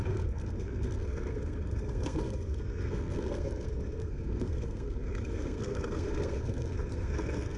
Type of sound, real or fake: fake